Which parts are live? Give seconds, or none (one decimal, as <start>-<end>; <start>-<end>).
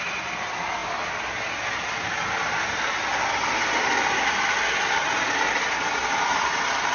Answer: 0.0-6.9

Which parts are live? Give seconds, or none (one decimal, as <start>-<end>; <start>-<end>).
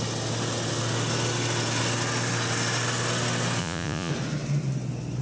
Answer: 0.0-3.6; 4.1-5.2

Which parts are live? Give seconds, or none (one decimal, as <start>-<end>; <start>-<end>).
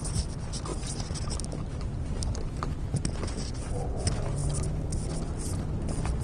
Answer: 0.0-6.2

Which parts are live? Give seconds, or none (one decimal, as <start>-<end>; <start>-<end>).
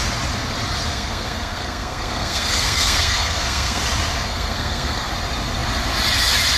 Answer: 0.0-0.9; 3.8-4.3; 5.1-6.6